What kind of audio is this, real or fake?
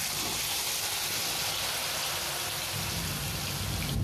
real